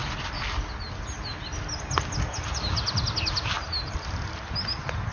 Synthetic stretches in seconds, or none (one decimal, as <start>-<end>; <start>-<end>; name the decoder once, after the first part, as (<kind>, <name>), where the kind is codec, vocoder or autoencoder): none